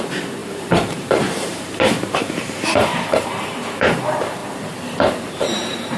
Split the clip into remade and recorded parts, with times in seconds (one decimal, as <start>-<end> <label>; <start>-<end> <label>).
0.0-4.4 remade; 4.4-5.3 recorded; 5.3-6.0 remade